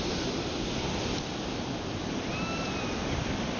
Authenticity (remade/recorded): recorded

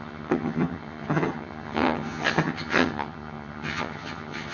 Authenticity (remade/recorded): remade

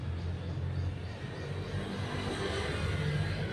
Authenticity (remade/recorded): recorded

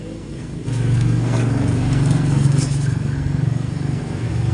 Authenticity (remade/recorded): remade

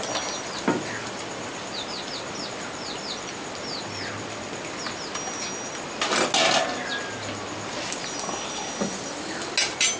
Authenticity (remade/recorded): recorded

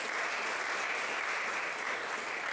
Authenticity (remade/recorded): recorded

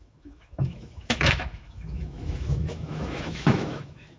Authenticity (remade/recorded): remade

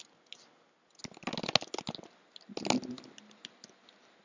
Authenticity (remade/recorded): recorded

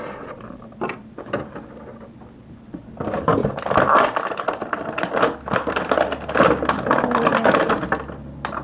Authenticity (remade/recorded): recorded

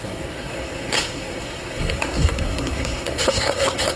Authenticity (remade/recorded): remade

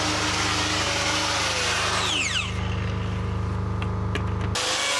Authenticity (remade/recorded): recorded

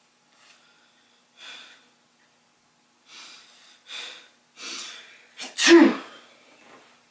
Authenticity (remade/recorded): recorded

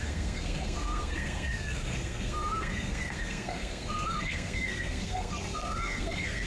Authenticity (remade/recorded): remade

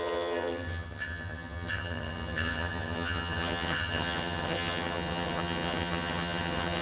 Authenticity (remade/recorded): remade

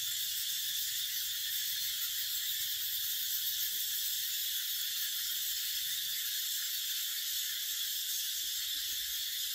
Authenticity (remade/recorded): recorded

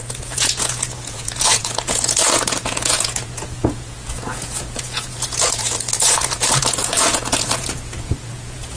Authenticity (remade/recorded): remade